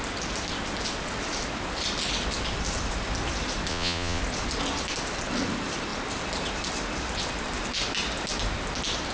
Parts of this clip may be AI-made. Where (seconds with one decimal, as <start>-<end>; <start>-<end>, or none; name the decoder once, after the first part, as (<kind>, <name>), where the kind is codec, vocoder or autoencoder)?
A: 3.7-4.2 (vocoder, Vocos)